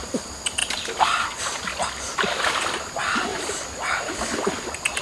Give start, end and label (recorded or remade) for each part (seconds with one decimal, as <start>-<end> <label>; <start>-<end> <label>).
0.0-5.0 recorded